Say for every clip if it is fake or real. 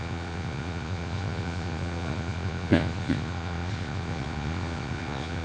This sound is fake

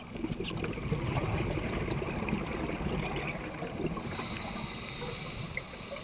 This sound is real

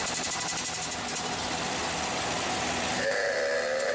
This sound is real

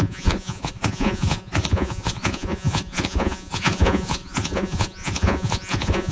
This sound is fake